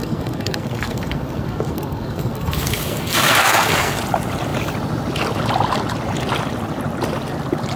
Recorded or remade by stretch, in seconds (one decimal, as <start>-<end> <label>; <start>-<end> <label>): 0.0-4.0 remade; 4.0-7.8 recorded